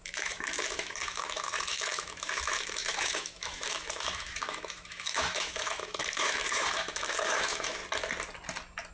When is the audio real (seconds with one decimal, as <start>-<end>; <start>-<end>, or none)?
7.8-8.9